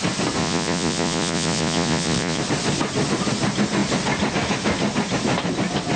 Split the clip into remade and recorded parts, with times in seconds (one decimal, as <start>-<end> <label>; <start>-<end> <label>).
0.0-0.4 recorded; 0.4-2.4 remade; 2.4-6.0 recorded